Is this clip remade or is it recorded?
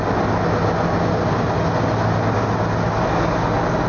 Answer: recorded